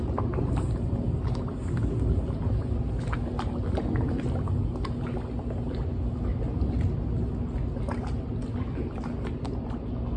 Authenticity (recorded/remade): recorded